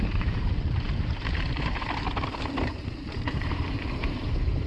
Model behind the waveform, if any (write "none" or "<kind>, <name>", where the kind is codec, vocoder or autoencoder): vocoder, BigVGAN v2